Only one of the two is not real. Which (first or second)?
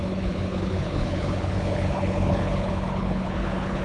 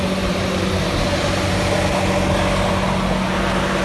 first